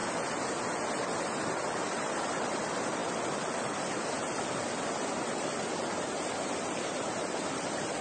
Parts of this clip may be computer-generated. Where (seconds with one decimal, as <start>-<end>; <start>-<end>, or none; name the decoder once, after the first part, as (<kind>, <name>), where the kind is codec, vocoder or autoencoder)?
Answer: 3.0-8.0 (vocoder, BigVGAN v2)